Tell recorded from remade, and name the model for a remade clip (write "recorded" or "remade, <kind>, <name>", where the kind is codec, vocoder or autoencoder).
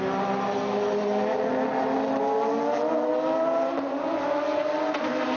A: recorded